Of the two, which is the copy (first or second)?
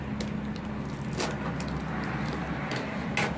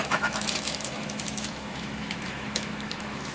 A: second